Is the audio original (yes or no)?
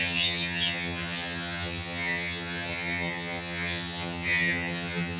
no